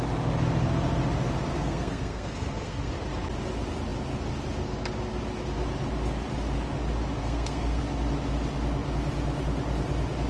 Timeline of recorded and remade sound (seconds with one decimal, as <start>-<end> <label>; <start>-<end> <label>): 0.0-1.5 recorded; 1.5-2.9 remade; 2.9-7.2 recorded; 7.2-7.8 remade; 7.8-10.3 recorded